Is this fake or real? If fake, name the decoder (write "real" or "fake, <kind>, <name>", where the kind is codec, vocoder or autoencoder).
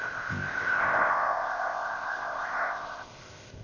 fake, codec, ZipCodec